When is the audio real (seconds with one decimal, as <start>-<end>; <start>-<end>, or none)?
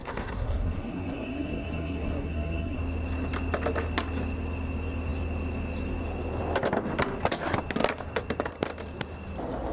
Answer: 2.8-9.7